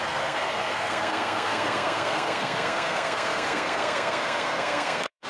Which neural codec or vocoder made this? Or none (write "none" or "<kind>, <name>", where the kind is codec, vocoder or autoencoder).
codec, SNAC